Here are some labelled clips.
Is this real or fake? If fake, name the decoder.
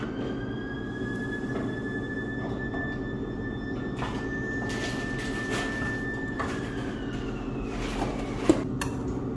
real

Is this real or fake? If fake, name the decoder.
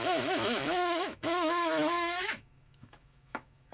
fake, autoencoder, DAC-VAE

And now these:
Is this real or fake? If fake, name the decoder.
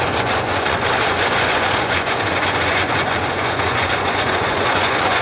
fake, vocoder, Vocos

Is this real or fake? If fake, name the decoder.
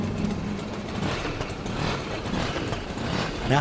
fake, vocoder, BigVGAN v2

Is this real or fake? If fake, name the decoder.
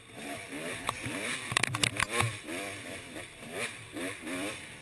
fake, vocoder, BigVGAN v2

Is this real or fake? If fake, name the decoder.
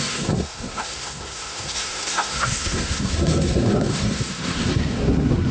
fake, codec, SNAC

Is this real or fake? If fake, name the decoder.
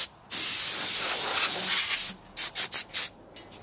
real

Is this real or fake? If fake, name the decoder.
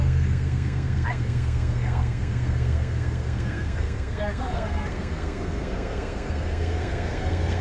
fake, codec, SNAC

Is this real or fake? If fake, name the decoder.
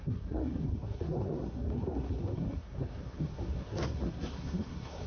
fake, codec, SNAC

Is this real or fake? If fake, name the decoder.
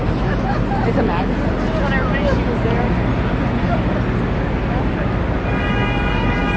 real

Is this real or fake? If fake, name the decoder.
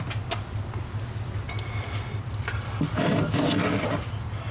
real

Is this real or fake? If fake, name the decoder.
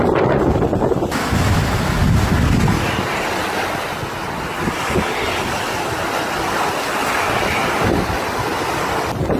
real